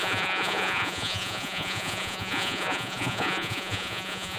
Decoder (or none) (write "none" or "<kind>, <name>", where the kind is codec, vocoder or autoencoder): vocoder, Vocos